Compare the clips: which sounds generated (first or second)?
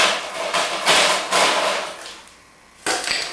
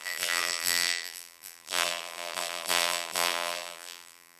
second